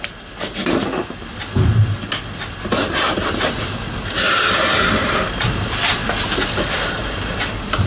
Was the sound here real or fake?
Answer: real